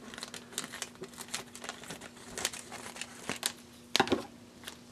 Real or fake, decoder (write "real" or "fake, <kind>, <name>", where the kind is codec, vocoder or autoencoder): real